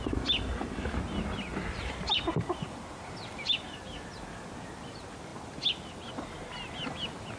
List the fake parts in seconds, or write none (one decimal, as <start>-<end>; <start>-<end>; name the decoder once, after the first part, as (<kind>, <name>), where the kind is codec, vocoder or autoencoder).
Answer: 1.5-4.1 (vocoder, BigVGAN v2)